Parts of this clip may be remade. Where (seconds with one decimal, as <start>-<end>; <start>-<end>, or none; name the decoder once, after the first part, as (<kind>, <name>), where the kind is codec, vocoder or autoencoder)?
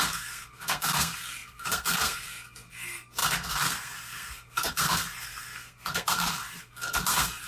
0.0-7.5 (codec, SNAC)